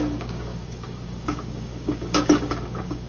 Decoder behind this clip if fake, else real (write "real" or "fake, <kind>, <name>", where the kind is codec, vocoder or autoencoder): fake, codec, DAC